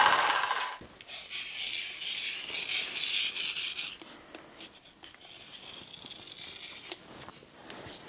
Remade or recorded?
recorded